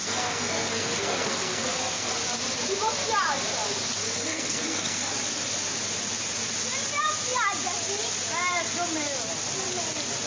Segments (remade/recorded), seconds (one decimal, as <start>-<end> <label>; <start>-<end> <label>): 0.0-2.1 remade; 2.1-4.0 recorded; 4.0-5.1 remade; 5.1-10.3 recorded